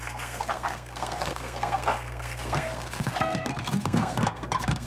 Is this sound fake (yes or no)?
yes